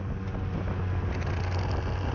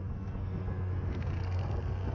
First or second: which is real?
first